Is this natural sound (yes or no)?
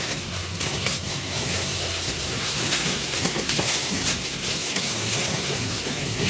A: no